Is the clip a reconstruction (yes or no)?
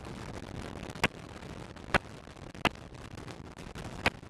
no